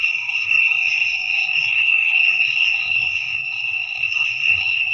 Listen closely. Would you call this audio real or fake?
fake